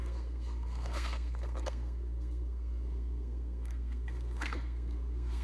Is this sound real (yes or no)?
no